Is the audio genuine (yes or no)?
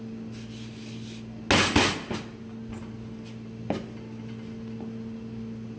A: yes